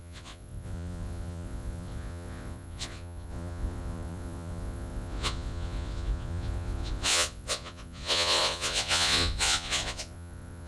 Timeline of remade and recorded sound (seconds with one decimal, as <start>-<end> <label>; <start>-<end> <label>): 0.0-10.7 remade